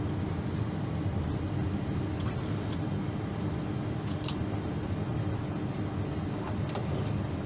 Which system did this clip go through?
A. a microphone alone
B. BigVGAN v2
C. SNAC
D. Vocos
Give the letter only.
A